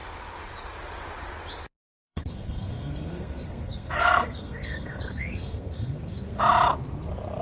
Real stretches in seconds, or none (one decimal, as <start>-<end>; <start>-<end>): 0.0-2.0; 6.4-7.4